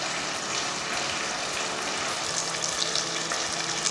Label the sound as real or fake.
real